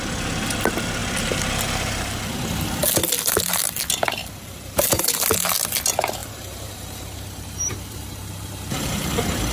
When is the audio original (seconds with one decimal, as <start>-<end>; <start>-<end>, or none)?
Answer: 0.0-4.2; 5.2-6.2